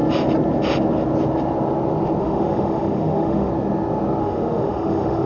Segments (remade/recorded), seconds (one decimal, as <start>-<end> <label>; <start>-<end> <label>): 0.0-2.2 recorded; 2.2-3.5 remade; 3.5-4.2 recorded; 4.2-5.3 remade